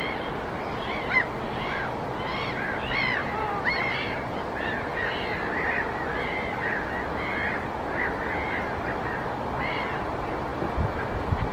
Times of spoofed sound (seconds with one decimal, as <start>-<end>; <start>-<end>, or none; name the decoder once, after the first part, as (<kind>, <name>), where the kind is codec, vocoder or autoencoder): 3.2-4.7 (vocoder, BigVGAN v2)